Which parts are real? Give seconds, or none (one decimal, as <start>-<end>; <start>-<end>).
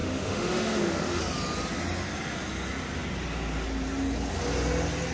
1.2-5.1